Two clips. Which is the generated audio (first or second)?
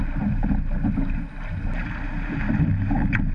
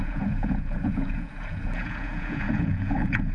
second